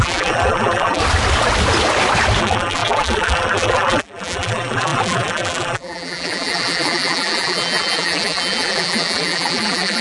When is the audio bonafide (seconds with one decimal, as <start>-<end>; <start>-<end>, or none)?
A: 1.0-2.4